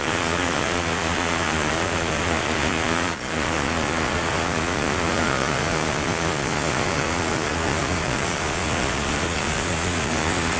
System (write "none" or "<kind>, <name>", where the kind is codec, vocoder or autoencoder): vocoder, Vocos